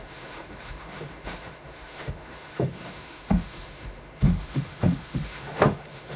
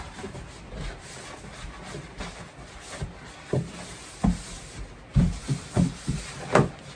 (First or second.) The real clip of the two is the second